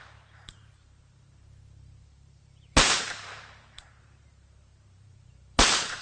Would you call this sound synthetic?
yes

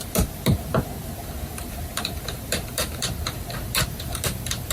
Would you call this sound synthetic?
yes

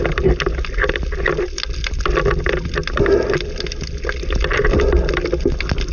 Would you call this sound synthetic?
no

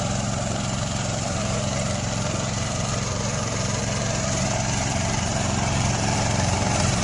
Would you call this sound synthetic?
yes